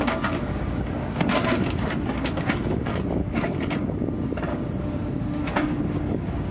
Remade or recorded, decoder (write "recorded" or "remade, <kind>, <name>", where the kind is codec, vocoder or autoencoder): remade, codec, DAC